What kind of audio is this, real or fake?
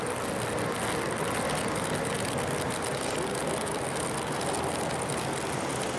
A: real